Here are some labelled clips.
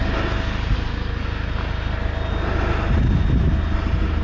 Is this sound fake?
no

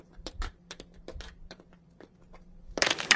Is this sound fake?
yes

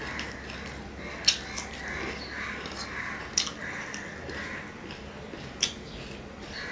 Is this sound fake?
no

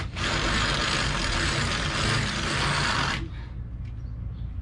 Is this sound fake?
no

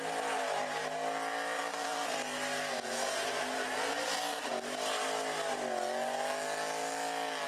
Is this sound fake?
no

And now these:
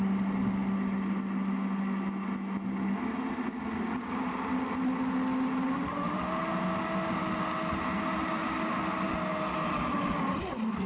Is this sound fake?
no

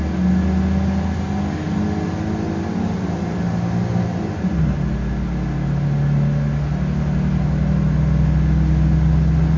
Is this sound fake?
no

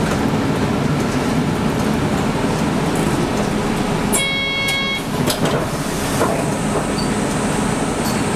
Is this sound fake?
no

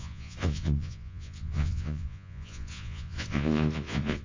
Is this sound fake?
yes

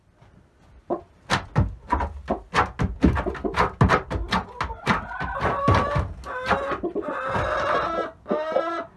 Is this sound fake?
no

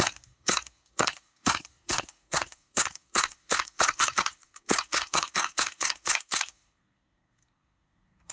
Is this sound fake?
yes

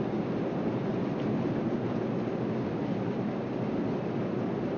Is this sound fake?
no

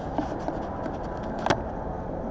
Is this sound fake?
no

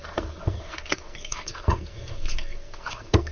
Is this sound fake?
yes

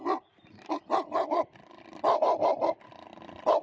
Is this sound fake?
no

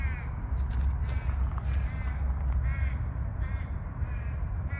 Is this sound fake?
no